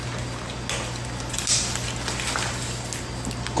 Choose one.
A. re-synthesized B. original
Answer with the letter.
B